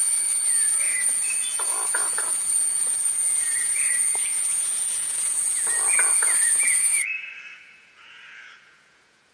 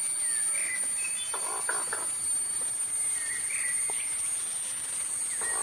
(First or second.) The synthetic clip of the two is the first